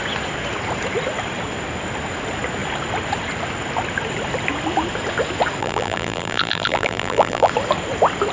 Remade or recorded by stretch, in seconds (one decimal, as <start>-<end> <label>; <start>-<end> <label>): 0.0-5.6 recorded; 5.6-7.5 remade; 7.5-8.3 recorded